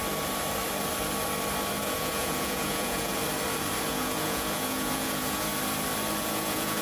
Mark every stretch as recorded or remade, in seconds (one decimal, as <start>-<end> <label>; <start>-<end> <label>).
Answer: 0.0-1.8 recorded; 1.8-3.1 remade; 3.1-3.9 recorded; 3.9-5.5 remade; 5.5-6.2 recorded; 6.2-6.8 remade